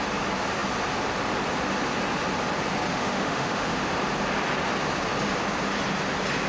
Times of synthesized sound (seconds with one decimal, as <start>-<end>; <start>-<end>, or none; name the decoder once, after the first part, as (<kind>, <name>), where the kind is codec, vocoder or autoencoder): 2.9-4.0 (autoencoder, DAC-VAE)